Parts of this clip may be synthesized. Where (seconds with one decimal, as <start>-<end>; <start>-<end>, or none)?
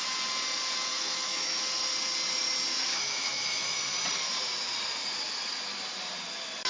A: 0.9-1.6; 2.9-3.8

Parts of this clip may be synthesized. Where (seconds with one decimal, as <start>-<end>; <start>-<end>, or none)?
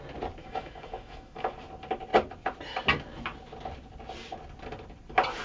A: 0.4-1.5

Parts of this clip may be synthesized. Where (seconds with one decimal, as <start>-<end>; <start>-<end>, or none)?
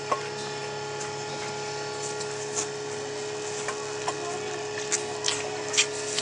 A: none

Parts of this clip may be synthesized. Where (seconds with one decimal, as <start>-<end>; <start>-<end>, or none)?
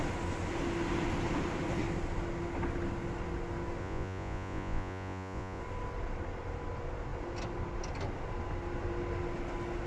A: 3.8-5.6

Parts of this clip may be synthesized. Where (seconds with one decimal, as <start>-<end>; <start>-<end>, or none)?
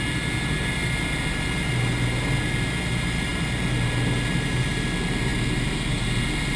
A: none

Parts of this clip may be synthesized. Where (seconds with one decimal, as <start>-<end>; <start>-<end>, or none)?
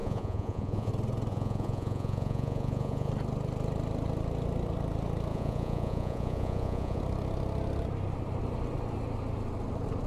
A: 0.0-0.9; 1.3-3.1; 5.3-7.0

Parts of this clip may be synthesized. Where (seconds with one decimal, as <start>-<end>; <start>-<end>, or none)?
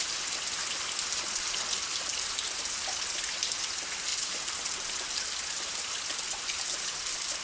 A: none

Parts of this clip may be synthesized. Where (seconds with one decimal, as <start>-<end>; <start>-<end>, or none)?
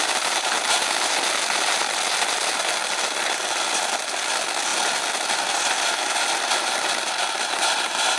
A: none